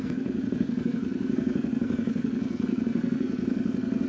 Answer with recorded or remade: remade